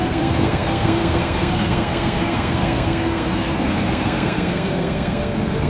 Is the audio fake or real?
fake